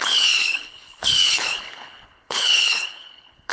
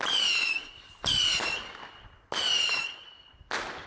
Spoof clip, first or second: first